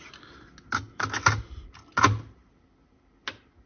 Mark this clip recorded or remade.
recorded